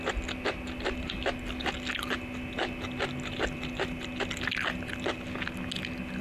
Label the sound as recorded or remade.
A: recorded